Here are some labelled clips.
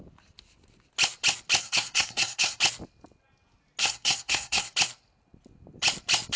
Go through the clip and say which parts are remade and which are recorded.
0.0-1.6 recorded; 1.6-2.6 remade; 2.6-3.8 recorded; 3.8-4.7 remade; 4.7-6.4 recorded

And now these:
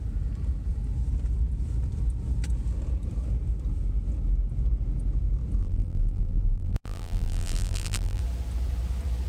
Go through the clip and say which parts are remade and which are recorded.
0.0-5.6 recorded; 5.6-8.2 remade; 8.2-9.3 recorded

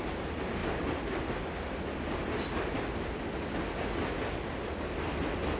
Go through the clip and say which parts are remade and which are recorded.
0.0-5.6 recorded

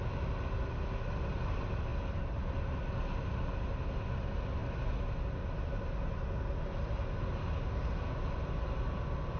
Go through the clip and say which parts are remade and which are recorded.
0.0-9.4 recorded

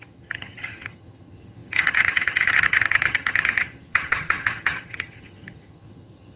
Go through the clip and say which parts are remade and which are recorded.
0.0-6.4 remade